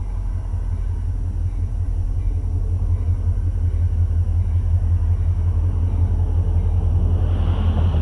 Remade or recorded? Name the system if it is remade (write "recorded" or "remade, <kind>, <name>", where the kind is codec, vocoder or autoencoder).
recorded